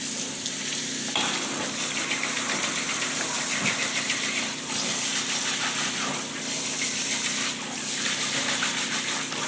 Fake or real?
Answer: real